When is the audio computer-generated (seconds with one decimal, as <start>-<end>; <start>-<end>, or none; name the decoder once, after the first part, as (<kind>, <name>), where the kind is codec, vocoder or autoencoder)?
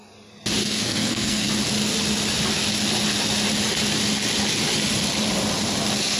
0.6-1.5 (codec, SNAC)